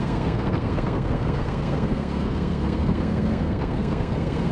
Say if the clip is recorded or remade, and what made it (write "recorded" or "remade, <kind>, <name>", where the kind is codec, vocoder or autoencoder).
remade, codec, SNAC